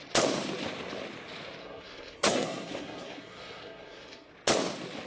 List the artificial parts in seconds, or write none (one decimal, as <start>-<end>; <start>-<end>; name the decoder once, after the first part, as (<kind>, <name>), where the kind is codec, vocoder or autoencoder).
1.6-4.3 (codec, SNAC)